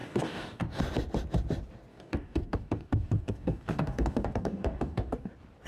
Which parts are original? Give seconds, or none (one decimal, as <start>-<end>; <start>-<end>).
0.8-1.9; 5.3-5.7